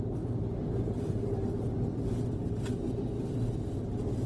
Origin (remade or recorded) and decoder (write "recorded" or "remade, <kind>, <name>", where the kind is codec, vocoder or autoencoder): recorded